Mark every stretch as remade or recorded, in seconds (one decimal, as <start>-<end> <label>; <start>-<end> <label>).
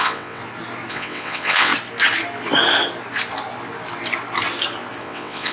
0.0-0.4 remade; 0.4-0.9 recorded; 0.9-1.7 remade; 1.7-5.0 recorded; 5.0-5.5 remade